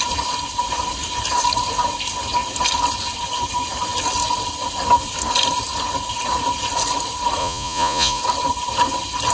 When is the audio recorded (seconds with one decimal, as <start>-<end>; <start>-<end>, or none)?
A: 0.0-7.4; 8.2-9.3